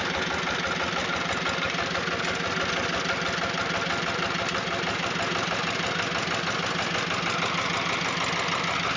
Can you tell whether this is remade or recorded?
recorded